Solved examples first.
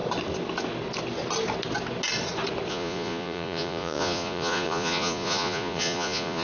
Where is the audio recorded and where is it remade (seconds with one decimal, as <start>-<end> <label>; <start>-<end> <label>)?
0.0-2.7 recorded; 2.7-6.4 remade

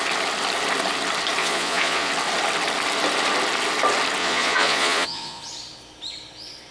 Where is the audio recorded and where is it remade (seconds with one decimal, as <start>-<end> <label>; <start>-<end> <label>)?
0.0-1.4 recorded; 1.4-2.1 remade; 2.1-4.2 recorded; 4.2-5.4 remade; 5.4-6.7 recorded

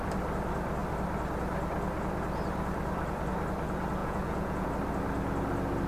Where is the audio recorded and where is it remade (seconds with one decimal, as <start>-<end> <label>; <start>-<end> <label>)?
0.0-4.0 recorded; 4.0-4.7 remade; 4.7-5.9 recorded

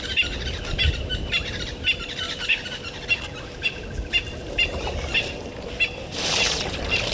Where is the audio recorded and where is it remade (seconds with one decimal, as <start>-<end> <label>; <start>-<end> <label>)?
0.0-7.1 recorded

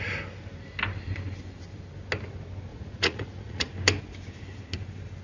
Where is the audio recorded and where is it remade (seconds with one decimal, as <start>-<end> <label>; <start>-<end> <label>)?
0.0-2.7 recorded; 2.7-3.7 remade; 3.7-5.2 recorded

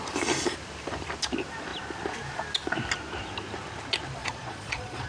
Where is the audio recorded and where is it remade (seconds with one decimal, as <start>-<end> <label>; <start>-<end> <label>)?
0.0-4.2 recorded; 4.2-5.1 remade

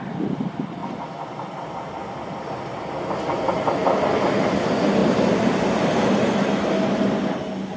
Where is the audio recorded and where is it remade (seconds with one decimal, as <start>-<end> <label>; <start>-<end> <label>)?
0.0-7.8 recorded